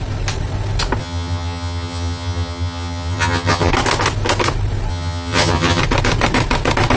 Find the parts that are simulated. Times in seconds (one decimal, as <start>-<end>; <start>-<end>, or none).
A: 1.0-3.7; 4.9-5.8